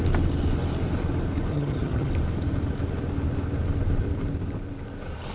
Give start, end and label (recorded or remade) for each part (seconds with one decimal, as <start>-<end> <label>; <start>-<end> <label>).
0.0-1.5 recorded; 1.5-2.1 remade; 2.1-5.3 recorded